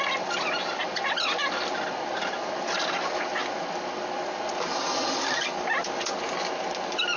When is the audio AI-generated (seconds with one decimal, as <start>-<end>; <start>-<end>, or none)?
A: none